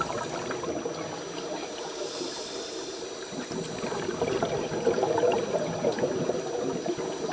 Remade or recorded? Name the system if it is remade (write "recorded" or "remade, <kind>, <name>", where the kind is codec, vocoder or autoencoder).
recorded